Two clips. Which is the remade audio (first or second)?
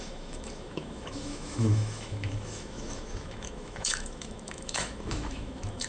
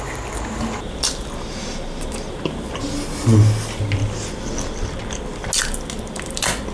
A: first